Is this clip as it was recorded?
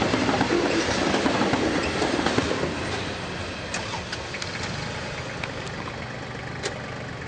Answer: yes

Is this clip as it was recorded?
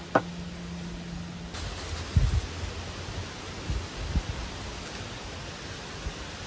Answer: yes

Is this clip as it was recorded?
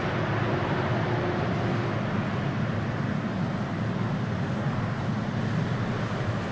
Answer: yes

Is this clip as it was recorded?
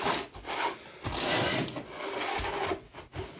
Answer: yes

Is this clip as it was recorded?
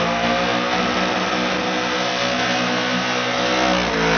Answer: yes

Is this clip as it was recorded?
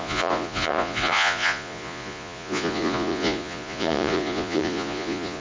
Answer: no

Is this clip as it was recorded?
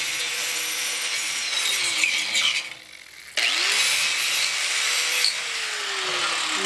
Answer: yes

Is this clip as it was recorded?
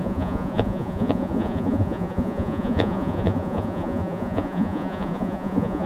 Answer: no